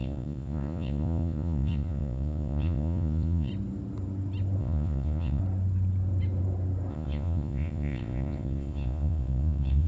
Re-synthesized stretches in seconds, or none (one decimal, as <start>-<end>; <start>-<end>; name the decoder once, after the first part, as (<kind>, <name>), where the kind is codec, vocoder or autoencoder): 0.0-3.5 (vocoder, Vocos); 4.6-5.4; 6.9-9.9